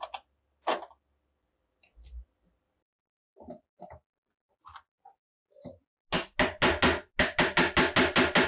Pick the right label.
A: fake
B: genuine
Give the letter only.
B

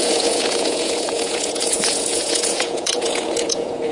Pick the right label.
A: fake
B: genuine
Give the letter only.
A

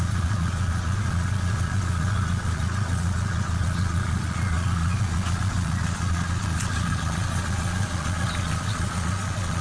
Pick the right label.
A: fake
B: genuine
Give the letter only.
A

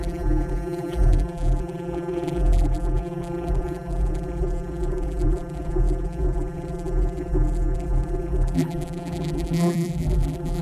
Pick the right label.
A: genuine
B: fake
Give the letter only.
B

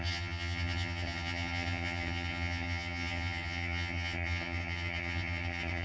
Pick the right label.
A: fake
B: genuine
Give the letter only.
A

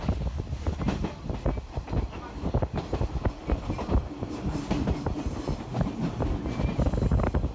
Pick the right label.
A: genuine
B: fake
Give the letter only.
A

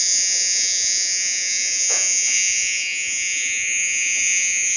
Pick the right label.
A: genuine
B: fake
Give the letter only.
B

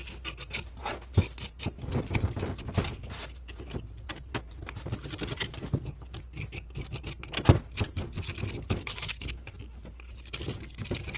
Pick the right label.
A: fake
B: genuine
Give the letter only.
B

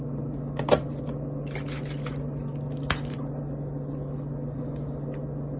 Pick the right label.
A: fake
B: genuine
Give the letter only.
B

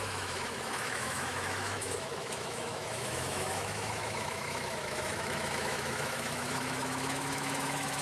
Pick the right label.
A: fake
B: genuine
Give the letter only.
A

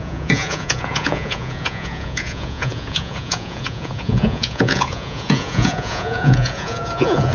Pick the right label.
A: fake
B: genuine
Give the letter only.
A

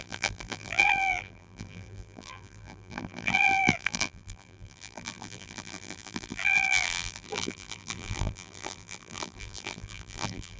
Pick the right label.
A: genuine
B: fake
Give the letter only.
B